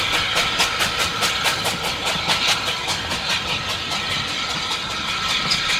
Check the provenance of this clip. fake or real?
real